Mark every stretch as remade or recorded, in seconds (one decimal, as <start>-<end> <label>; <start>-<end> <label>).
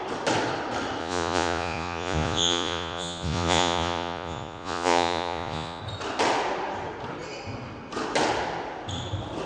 0.0-1.0 recorded; 1.0-5.8 remade; 5.8-9.5 recorded